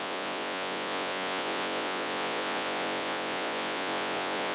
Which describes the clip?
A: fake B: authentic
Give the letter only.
A